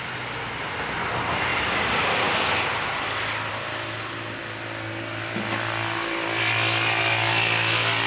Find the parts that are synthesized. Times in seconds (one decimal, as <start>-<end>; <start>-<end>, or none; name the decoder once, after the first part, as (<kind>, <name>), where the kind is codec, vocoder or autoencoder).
none